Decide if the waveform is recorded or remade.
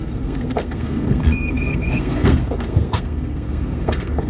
remade